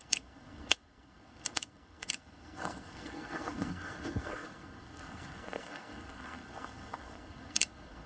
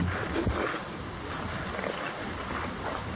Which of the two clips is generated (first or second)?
first